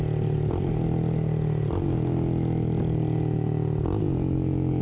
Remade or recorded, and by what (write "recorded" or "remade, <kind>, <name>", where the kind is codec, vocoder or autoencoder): recorded